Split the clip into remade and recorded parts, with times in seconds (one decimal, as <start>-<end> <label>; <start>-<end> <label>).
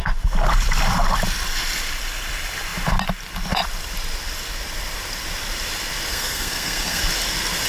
0.0-6.1 recorded; 6.1-7.0 remade; 7.0-7.7 recorded